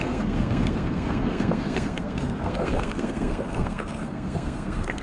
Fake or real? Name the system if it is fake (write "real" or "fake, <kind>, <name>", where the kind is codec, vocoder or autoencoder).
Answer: fake, codec, SNAC